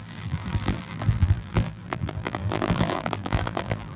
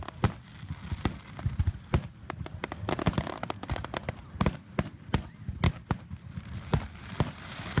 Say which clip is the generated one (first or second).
first